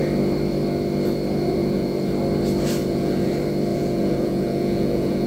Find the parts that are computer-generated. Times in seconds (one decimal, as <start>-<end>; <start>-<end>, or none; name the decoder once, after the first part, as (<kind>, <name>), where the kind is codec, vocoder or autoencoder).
1.6-2.1 (vocoder, Vocos); 2.8-3.3; 3.7-5.3